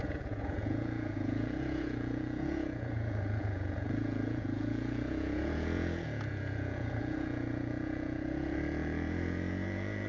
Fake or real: fake